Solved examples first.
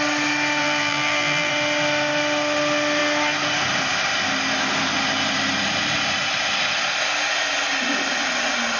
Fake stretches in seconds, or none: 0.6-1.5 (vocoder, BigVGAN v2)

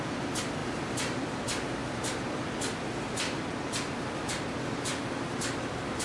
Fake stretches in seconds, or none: 0.6-1.4 (vocoder, BigVGAN v2)